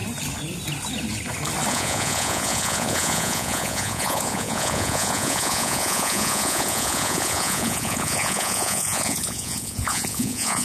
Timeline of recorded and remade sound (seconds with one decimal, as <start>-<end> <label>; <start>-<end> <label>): 0.0-1.7 recorded; 1.7-10.6 remade